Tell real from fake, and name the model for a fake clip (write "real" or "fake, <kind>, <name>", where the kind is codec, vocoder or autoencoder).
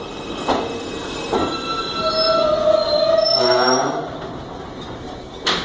real